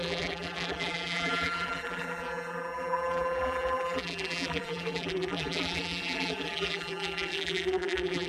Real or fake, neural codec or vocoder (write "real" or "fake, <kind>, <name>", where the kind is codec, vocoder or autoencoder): fake, vocoder, BigVGAN v2